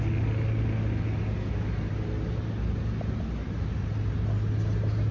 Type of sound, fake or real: real